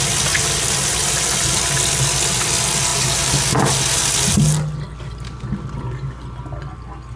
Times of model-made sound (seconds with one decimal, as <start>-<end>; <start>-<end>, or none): none